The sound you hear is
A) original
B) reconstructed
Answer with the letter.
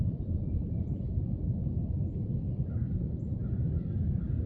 A